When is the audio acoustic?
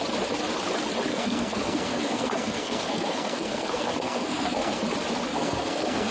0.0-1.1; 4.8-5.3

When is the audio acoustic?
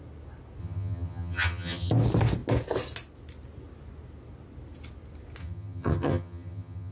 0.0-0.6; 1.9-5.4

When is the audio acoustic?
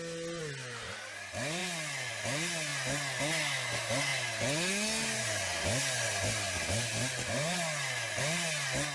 0.0-8.9